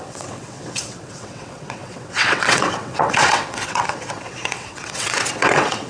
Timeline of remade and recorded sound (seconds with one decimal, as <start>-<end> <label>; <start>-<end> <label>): 0.0-5.9 remade

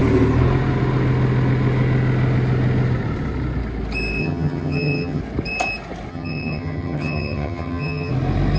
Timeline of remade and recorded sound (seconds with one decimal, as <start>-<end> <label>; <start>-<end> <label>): 0.0-4.2 recorded; 4.2-5.2 remade; 5.2-6.1 recorded; 6.1-8.1 remade; 8.1-8.6 recorded

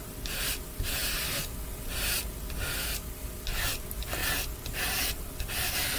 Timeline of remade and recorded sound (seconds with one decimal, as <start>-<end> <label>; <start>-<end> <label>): 0.0-6.0 recorded